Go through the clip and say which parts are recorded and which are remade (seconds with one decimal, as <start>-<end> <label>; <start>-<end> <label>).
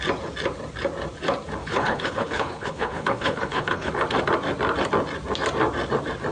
0.0-1.6 recorded; 1.6-3.9 remade; 3.9-6.3 recorded